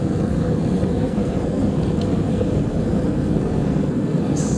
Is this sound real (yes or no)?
no